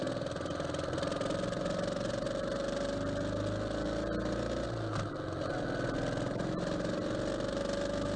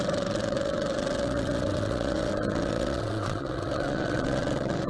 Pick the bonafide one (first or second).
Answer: first